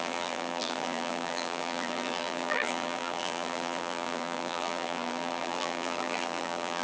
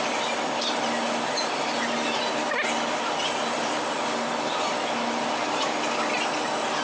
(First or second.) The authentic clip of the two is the second